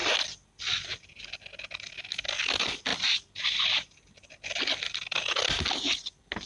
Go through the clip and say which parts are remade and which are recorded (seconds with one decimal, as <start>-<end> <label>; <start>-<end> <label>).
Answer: 0.0-6.5 recorded